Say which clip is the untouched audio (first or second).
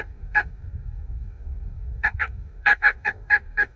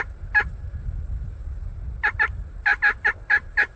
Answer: second